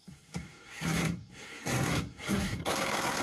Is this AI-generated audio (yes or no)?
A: yes